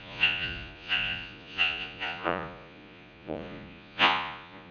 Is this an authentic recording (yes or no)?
no